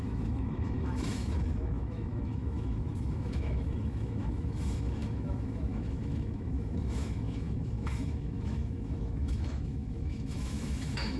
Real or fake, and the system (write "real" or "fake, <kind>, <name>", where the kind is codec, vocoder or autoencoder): fake, autoencoder, DAC-VAE